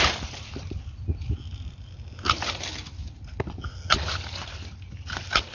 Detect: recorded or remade recorded